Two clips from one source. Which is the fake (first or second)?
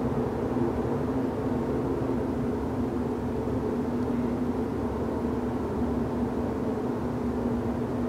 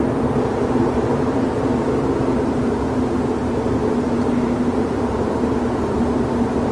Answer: second